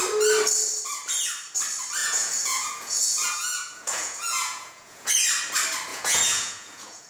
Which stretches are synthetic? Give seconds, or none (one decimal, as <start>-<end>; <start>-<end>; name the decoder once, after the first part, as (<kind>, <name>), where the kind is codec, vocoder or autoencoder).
2.0-5.1 (vocoder, Vocos); 5.9-7.1